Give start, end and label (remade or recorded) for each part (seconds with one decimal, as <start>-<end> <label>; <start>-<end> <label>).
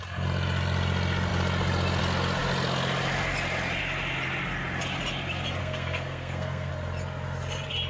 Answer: 0.0-5.6 recorded; 5.6-6.7 remade; 6.7-7.9 recorded